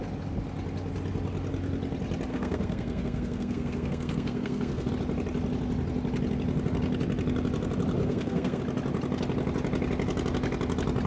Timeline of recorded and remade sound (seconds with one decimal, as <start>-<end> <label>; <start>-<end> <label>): 0.0-2.3 recorded; 2.3-4.9 remade; 4.9-8.0 recorded; 8.0-8.6 remade; 8.6-11.1 recorded